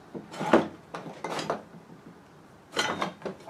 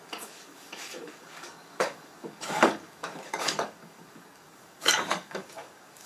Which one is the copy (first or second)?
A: second